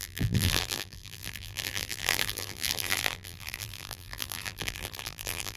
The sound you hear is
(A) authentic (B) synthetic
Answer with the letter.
B